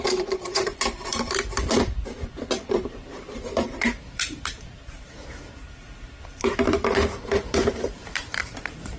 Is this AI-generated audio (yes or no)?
yes